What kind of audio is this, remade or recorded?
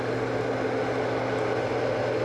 recorded